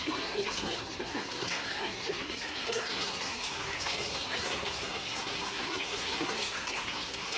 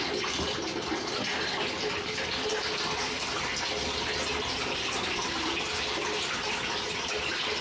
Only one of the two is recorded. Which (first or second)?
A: second